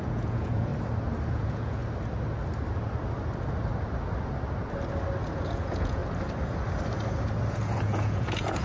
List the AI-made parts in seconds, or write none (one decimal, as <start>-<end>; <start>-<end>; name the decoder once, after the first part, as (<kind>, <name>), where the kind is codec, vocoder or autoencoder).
0.0-0.7 (vocoder, Vocos); 1.3-1.8; 5.3-6.0; 7.5-8.6